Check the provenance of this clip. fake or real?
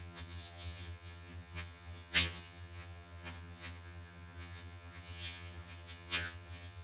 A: fake